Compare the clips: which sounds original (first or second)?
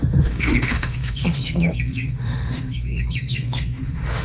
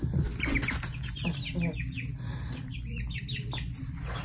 second